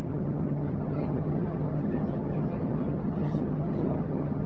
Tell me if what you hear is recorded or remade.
remade